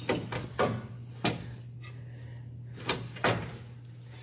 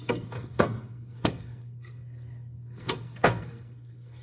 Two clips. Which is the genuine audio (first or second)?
first